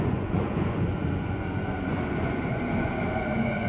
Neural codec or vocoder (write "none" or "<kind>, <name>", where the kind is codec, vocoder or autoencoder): vocoder, Vocos